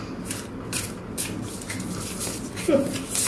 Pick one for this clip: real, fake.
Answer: real